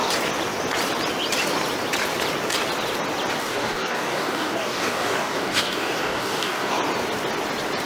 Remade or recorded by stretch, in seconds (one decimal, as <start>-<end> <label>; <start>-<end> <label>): 0.0-3.4 recorded; 3.4-6.7 remade; 6.7-7.9 recorded